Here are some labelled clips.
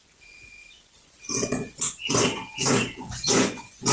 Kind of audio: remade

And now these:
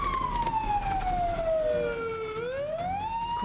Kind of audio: recorded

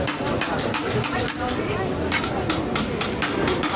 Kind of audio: recorded